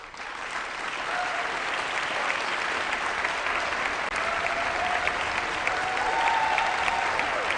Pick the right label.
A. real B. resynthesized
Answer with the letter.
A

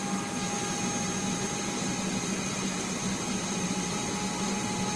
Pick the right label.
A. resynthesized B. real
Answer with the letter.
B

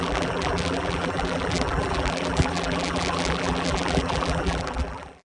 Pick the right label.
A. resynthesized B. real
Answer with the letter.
A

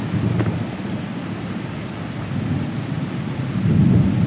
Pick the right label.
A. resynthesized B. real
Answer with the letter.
B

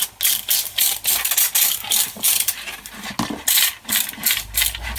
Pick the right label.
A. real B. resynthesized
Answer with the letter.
A